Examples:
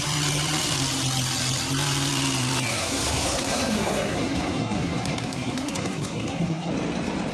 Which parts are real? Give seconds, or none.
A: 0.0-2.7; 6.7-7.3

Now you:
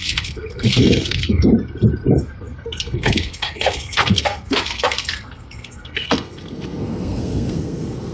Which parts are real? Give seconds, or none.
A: 1.5-2.2

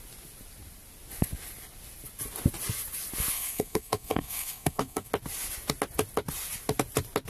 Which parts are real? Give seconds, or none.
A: 0.0-3.3; 5.1-7.3

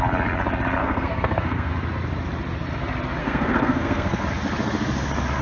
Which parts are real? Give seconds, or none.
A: 0.0-0.8; 1.7-3.2; 4.2-5.4

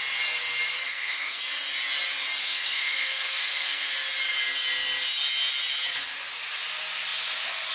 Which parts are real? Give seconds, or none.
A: 0.0-0.9; 1.4-2.4; 3.9-7.7

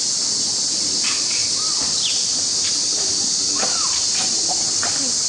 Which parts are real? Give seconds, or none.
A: 0.0-5.3

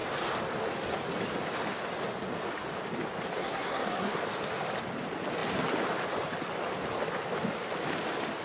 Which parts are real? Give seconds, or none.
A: 0.0-3.4; 4.2-8.4